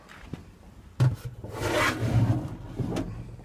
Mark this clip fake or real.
fake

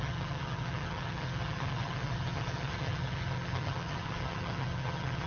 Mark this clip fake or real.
fake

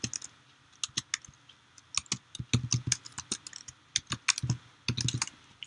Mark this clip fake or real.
real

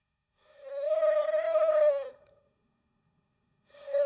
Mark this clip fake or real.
fake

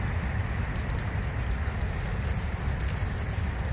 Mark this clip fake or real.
real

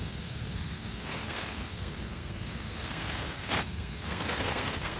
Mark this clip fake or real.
fake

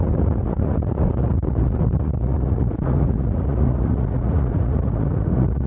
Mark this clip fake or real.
fake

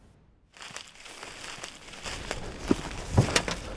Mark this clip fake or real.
real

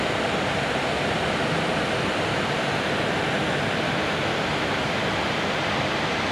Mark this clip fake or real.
real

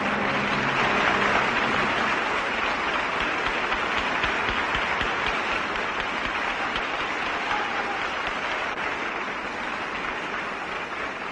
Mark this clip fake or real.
real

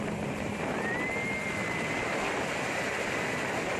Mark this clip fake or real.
real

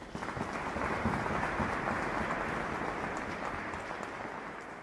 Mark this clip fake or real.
real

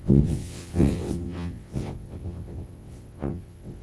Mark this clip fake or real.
fake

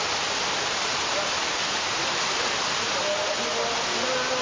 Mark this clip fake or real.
real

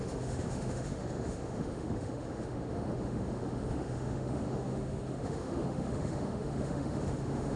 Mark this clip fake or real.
fake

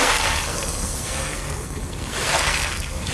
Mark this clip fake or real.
fake